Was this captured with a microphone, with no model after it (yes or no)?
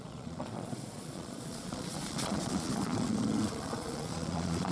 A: no